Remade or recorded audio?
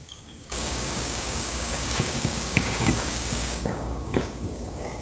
remade